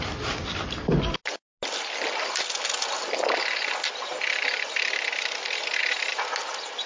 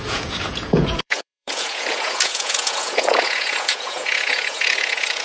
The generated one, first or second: second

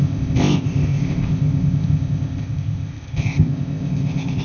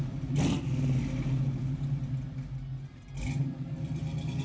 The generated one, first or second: first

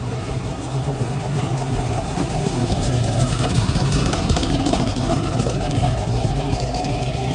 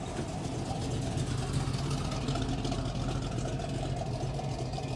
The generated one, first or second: first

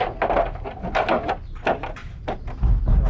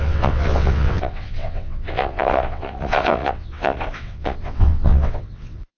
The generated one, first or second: second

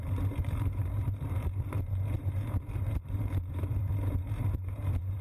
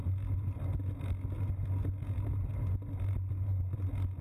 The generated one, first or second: first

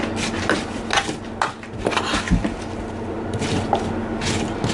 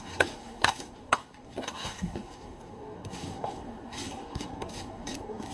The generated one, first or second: second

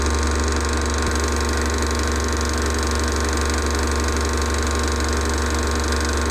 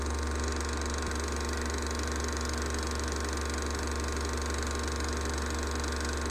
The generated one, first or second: second